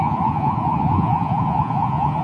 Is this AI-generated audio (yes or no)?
yes